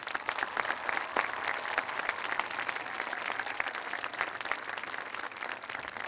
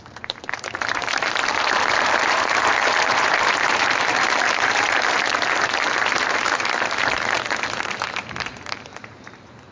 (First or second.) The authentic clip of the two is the first